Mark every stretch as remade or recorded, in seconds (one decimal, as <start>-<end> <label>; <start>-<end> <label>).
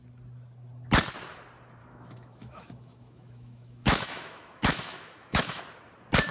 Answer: 0.0-1.8 recorded; 1.8-5.6 remade; 5.6-6.3 recorded